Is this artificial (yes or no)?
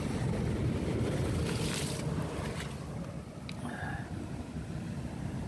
no